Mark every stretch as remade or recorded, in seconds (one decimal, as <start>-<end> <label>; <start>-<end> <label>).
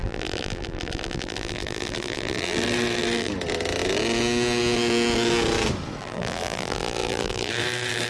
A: 0.0-3.3 remade; 3.3-6.0 recorded; 6.0-8.1 remade